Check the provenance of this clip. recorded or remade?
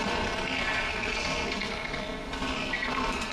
remade